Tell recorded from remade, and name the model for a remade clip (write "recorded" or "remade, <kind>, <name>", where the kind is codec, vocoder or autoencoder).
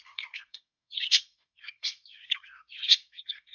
remade, codec, SNAC